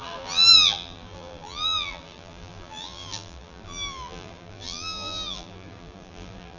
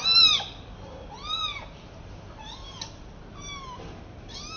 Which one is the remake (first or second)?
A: first